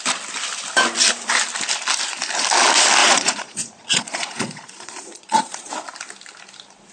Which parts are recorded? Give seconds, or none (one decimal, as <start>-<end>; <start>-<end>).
0.0-3.0; 5.7-6.9